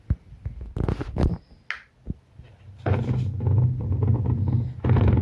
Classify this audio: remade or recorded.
recorded